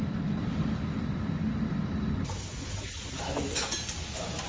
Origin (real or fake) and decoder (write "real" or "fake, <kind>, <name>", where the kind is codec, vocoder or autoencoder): real